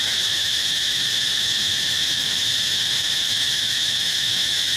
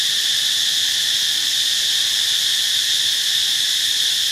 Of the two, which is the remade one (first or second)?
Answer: first